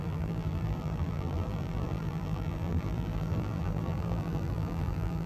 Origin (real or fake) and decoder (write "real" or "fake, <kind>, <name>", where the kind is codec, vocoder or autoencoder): fake, vocoder, BigVGAN v2